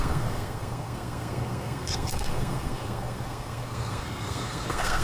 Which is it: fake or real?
fake